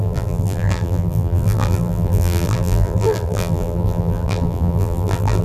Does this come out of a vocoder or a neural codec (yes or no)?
yes